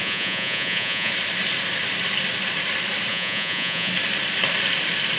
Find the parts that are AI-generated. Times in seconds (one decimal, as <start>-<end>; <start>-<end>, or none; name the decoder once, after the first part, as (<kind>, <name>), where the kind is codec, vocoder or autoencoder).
0.0-1.1 (vocoder, Vocos); 3.1-3.9